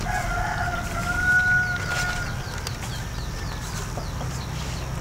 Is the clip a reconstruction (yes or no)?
no